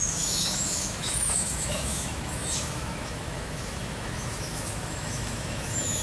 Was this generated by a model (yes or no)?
yes